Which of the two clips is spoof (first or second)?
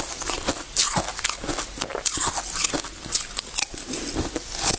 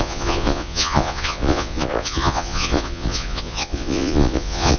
second